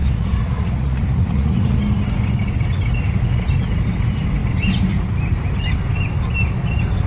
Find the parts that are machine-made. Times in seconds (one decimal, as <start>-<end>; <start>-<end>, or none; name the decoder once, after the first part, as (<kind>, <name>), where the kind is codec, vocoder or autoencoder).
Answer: 0.0-1.8 (vocoder, Vocos)